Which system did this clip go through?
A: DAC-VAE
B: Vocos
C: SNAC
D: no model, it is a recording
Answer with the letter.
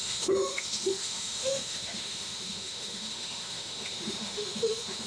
A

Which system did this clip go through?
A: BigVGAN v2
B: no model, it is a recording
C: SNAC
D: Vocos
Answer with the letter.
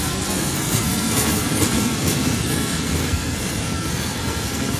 C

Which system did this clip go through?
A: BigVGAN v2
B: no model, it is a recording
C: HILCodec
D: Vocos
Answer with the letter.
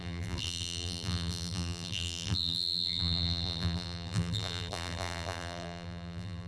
A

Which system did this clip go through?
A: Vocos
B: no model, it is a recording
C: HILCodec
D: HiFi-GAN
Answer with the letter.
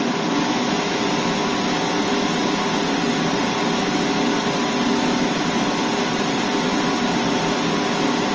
B